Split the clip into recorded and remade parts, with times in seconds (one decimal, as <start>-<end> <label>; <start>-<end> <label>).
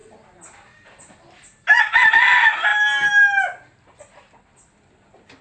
0.0-5.4 recorded